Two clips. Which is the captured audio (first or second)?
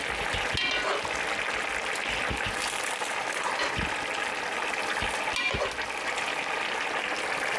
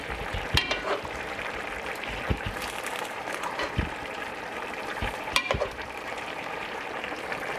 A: first